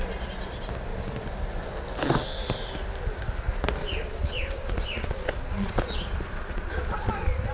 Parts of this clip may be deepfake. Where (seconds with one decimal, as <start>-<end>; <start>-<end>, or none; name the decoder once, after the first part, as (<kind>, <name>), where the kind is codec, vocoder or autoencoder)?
3.8-7.5 (vocoder, Vocos)